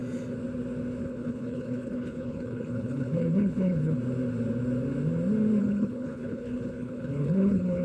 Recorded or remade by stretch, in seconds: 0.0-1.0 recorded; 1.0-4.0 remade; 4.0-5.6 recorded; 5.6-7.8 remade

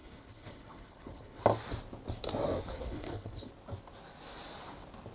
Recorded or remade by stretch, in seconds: 0.0-1.4 remade; 1.4-2.7 recorded; 2.7-3.5 remade; 3.5-5.1 recorded